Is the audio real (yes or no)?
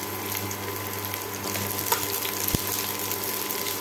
yes